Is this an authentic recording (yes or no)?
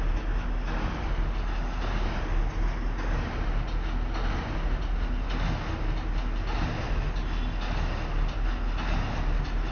yes